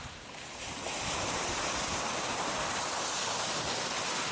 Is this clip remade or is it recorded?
recorded